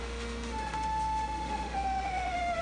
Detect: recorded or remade remade